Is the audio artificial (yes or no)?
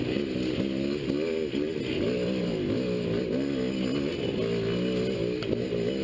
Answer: no